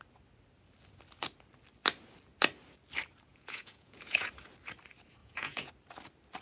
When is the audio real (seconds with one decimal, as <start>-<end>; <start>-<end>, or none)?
0.0-3.3; 4.3-5.2; 5.7-6.4